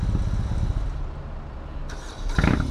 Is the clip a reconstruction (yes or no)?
no